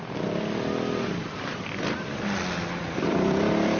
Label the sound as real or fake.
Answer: fake